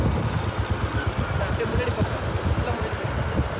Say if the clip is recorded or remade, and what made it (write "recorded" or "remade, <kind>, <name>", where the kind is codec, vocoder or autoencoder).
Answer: recorded